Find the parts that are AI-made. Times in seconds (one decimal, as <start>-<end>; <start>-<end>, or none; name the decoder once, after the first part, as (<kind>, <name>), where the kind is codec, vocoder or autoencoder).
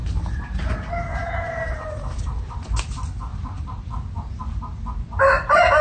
1.1-2.5 (vocoder, BigVGAN v2); 3.3-4.4